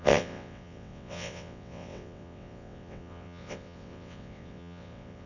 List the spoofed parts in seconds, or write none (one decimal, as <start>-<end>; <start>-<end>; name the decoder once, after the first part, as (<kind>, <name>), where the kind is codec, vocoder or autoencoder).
0.0-5.3 (vocoder, WaveNeXt)